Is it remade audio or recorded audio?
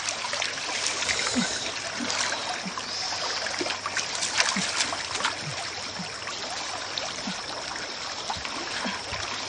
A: recorded